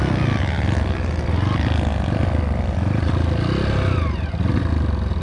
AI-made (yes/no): no